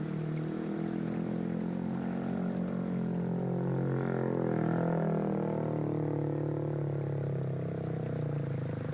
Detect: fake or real real